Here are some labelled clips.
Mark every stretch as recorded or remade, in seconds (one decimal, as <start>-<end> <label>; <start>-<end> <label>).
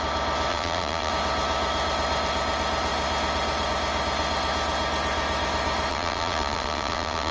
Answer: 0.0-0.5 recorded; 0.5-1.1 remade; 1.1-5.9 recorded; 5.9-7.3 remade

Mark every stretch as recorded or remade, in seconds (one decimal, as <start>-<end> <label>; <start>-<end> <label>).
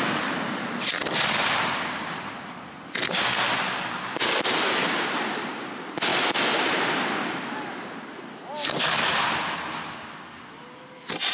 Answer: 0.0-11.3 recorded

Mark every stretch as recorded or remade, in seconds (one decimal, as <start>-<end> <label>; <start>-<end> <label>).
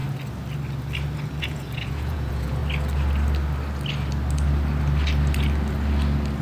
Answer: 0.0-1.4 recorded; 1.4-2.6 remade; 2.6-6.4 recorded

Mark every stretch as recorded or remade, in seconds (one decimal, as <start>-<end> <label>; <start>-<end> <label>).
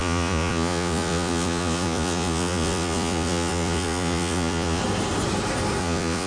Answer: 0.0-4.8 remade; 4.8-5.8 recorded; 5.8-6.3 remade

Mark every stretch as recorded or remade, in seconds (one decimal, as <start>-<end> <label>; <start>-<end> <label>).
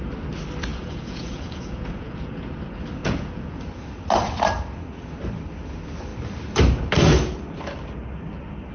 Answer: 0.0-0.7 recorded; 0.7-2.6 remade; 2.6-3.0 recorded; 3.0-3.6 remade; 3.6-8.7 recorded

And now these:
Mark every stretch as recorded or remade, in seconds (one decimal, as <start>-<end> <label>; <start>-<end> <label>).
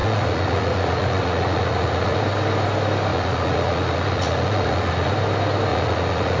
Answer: 0.0-2.2 remade; 2.2-3.1 recorded; 3.1-5.1 remade; 5.1-5.7 recorded; 5.7-6.4 remade